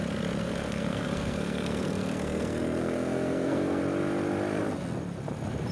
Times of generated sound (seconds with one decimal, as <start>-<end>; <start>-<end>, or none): 0.4-3.8

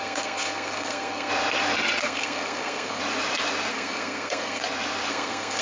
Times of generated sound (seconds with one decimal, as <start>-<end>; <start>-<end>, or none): 0.0-1.3; 2.0-3.0; 3.7-4.6; 5.1-5.6

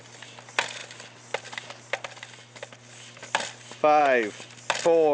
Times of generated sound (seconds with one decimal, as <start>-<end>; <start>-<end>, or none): none